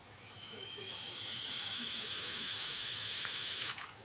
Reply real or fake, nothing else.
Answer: fake